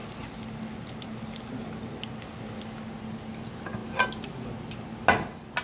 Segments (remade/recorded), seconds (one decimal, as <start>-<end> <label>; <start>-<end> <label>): 0.0-5.6 recorded